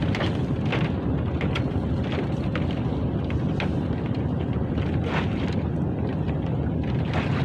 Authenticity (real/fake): real